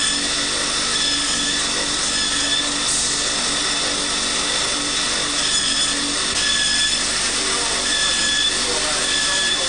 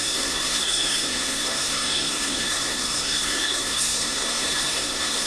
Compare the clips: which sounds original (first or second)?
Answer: first